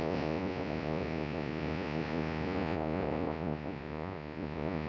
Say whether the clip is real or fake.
fake